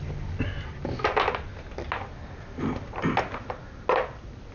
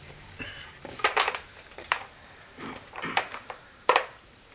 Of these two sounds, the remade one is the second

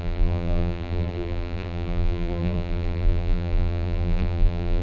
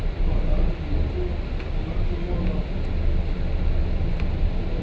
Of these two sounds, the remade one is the first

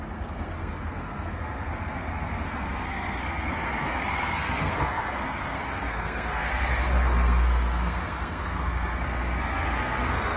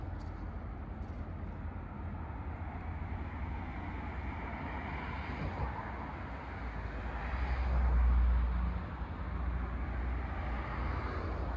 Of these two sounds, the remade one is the first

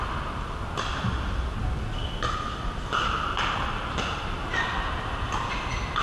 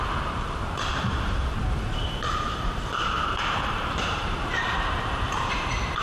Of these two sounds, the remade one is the second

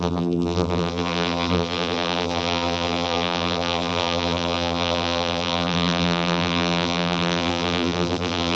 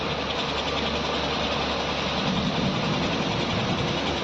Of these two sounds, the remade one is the first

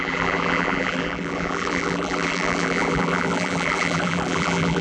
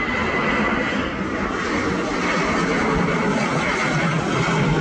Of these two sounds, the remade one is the first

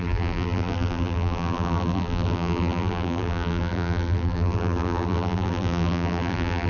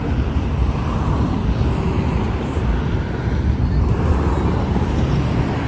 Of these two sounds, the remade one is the first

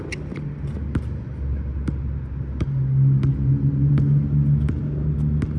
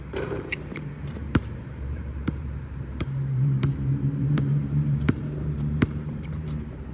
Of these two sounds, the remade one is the second